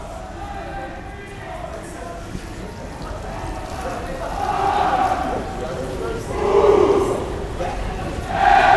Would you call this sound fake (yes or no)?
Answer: no